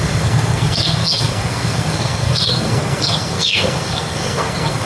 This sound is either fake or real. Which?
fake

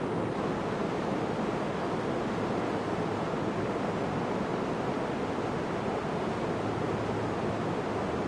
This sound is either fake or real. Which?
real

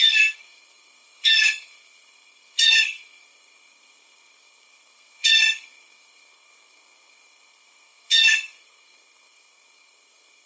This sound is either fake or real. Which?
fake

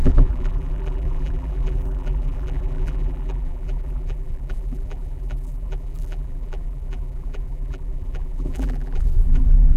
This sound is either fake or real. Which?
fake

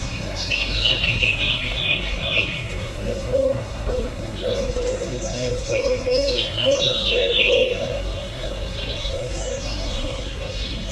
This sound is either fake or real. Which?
fake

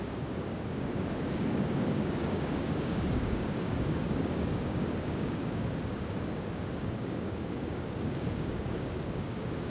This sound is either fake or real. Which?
fake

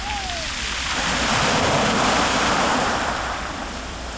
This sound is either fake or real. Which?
fake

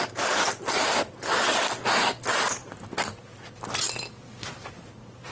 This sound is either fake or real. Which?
real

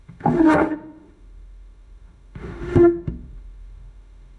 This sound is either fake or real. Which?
fake